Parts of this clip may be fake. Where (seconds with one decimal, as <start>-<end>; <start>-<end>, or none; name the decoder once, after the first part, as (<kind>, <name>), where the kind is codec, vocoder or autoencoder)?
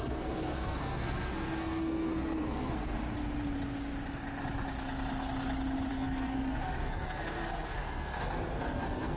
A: 0.0-2.9 (codec, SNAC); 5.9-9.2